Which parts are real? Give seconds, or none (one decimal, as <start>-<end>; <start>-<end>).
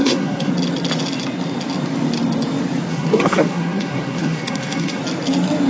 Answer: 0.5-2.9; 5.0-5.7